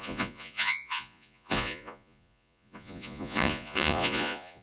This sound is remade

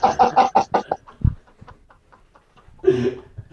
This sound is recorded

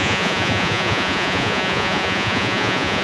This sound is remade